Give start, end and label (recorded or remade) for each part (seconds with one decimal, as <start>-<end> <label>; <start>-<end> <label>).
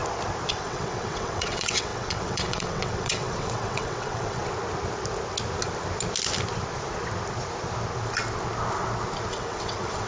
0.0-0.5 recorded; 0.5-4.4 remade; 4.4-9.3 recorded; 9.3-10.1 remade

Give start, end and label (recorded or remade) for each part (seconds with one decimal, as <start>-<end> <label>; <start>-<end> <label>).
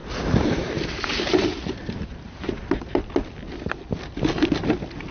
0.0-3.1 remade; 3.1-5.1 recorded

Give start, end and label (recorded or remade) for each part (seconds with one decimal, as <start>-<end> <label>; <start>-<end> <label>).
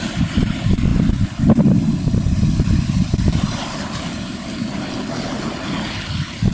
0.0-6.5 recorded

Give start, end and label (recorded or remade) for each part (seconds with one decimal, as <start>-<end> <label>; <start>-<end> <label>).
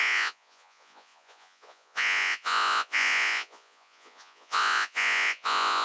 0.0-5.8 remade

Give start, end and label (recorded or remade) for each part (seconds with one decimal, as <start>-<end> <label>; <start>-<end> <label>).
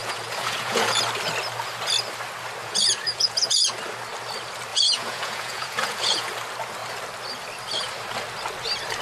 0.0-1.0 remade; 1.0-2.6 recorded; 2.6-3.6 remade; 3.6-4.7 recorded; 4.7-6.3 remade; 6.3-9.0 recorded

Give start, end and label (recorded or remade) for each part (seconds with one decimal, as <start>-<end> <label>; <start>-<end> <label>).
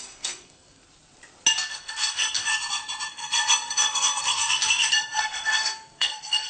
0.0-0.8 remade; 0.8-1.7 recorded; 1.7-2.5 remade; 2.5-3.1 recorded; 3.1-6.5 remade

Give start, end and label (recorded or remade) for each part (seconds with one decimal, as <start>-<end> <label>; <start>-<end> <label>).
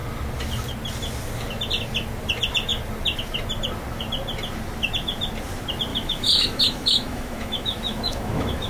0.0-5.9 recorded; 5.9-8.7 remade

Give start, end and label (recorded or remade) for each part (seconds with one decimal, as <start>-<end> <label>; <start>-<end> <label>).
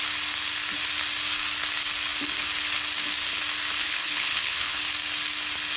0.0-3.8 recorded; 3.8-4.8 remade; 4.8-5.8 recorded